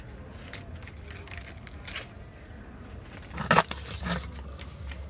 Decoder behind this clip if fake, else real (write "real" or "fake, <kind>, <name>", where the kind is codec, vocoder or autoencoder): real